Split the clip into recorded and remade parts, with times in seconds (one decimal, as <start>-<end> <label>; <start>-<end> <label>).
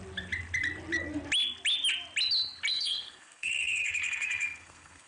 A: 0.0-2.7 recorded; 2.7-5.1 remade